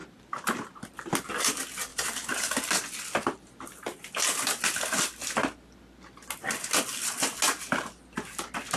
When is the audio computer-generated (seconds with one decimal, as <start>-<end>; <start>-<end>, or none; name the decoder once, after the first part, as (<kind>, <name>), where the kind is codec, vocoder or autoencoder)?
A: 0.0-1.1 (vocoder, BigVGAN v2); 1.9-2.5

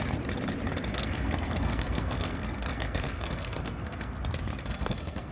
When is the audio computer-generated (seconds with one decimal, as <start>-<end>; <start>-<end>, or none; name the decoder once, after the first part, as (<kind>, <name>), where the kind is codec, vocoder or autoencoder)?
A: 0.9-4.1 (codec, SNAC); 4.6-5.3